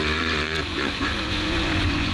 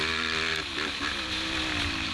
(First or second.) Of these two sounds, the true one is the second